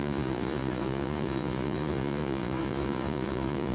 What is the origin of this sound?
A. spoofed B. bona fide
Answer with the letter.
A